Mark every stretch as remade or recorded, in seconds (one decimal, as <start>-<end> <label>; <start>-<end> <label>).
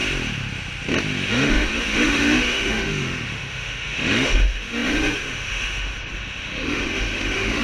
0.0-1.3 recorded; 1.3-7.6 remade